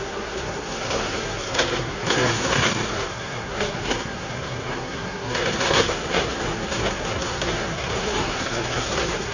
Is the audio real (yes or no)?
no